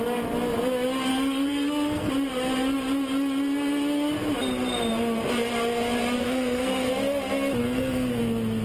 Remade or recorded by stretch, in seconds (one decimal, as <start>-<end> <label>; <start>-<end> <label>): 0.0-1.1 recorded; 1.1-2.1 remade; 2.1-6.2 recorded; 6.2-6.9 remade; 6.9-7.6 recorded; 7.6-8.2 remade; 8.2-8.6 recorded